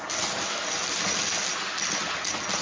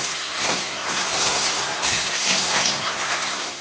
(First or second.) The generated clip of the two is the second